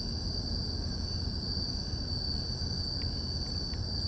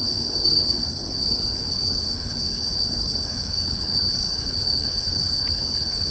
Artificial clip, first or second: second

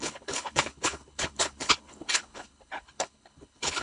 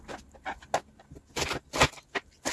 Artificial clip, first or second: first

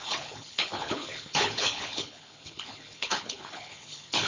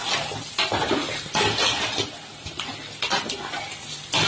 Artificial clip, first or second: first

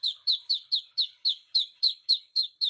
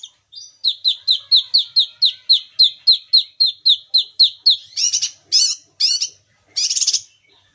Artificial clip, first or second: first